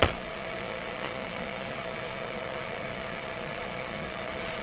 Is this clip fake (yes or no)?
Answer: yes